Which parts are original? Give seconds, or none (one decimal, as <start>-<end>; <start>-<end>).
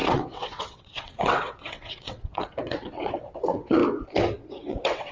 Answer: 3.8-4.5